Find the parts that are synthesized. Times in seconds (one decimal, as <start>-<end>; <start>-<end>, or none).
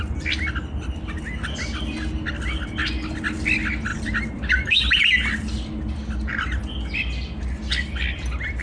3.9-5.0